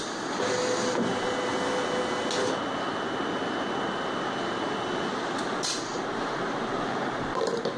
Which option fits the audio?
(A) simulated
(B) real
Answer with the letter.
B